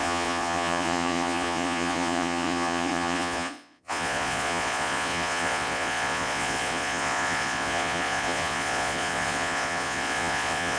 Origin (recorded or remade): remade